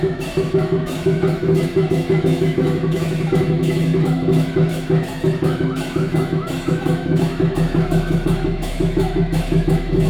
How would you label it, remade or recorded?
remade